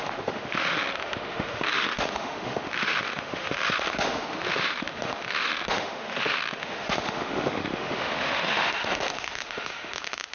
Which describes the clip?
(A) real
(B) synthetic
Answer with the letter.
B